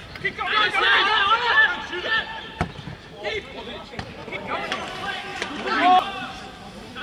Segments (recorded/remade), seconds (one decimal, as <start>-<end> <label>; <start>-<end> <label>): 0.0-1.5 remade; 1.5-2.1 recorded; 2.1-2.7 remade; 2.7-5.3 recorded; 5.3-6.4 remade; 6.4-7.0 recorded